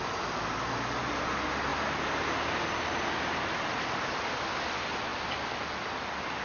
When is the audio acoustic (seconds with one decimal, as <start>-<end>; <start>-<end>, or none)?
0.0-6.4